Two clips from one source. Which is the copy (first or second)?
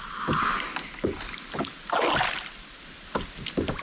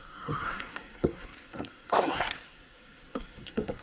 second